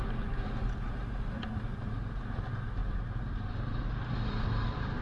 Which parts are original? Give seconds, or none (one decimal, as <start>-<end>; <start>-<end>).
0.0-5.0